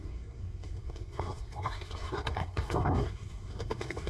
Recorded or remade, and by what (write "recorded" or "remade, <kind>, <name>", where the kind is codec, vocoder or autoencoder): remade, codec, SNAC